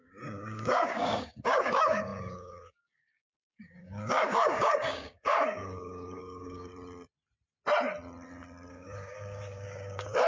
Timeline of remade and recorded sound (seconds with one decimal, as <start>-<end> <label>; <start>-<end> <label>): 0.0-6.7 remade; 6.7-8.7 recorded; 8.7-10.3 remade